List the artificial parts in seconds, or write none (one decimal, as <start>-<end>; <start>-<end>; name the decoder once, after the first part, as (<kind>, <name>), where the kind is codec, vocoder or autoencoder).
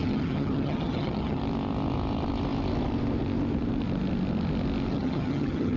0.0-1.4 (vocoder, HiFi-GAN); 4.9-5.8